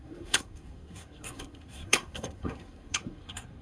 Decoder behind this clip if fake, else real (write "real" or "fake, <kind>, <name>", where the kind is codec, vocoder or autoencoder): fake, codec, SNAC